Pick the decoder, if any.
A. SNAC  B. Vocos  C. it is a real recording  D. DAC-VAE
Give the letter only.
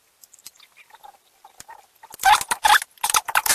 C